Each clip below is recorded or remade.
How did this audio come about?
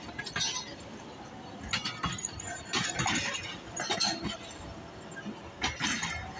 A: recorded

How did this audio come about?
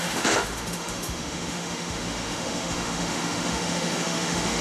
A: remade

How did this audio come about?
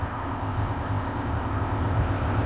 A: remade